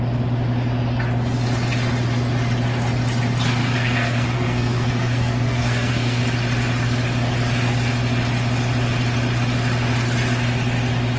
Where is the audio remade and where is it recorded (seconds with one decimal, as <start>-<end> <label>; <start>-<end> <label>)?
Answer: 0.0-3.6 recorded; 3.6-6.2 remade; 6.2-11.2 recorded